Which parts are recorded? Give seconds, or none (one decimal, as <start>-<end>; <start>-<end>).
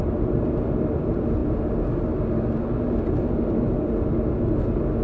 0.0-5.0